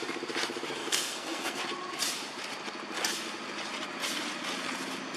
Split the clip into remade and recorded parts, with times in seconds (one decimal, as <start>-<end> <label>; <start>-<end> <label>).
0.0-0.8 recorded; 0.8-1.6 remade; 1.6-5.2 recorded

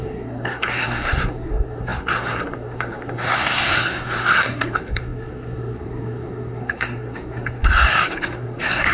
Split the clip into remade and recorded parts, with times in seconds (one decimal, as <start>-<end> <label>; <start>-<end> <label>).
0.0-8.9 remade

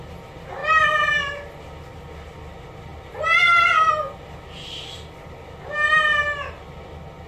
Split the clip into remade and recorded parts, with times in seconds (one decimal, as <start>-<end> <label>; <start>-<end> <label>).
0.0-7.3 recorded

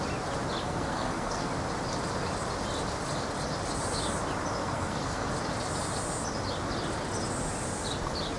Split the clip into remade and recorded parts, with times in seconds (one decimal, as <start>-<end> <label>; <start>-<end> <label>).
0.0-0.6 recorded; 0.6-1.5 remade; 1.5-4.6 recorded; 4.6-5.3 remade; 5.3-8.4 recorded

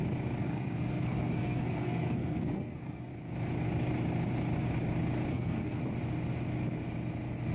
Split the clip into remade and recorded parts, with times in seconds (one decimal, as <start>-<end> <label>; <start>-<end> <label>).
0.0-0.4 recorded; 0.4-3.1 remade; 3.1-5.3 recorded; 5.3-5.8 remade; 5.8-7.5 recorded

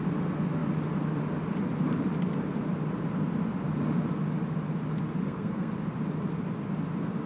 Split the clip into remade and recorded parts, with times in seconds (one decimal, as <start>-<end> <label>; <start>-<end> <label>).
0.0-5.2 recorded; 5.2-5.7 remade; 5.7-7.3 recorded